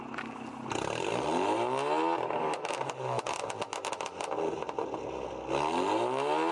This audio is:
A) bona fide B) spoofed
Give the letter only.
A